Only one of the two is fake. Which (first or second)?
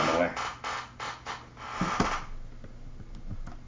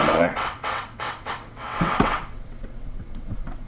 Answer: second